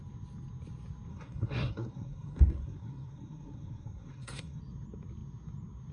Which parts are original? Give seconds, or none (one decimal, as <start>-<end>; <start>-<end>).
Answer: 0.0-1.1; 4.6-5.9

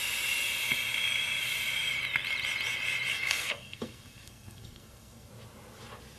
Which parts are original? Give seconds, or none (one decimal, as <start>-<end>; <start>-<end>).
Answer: 0.0-3.1; 5.3-6.2

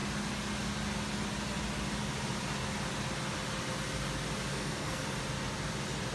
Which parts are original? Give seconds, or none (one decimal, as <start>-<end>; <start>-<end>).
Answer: 0.0-4.5; 5.0-6.1